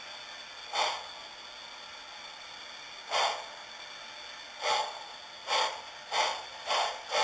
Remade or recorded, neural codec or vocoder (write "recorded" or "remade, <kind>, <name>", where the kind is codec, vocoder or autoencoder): recorded